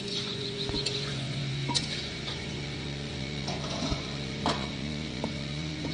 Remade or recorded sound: remade